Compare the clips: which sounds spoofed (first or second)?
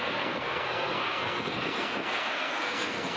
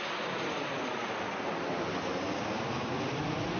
first